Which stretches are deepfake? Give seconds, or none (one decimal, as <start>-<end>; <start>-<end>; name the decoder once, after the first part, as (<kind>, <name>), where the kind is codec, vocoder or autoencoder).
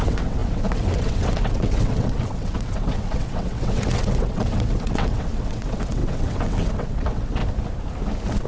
0.0-7.4 (vocoder, WaveNeXt)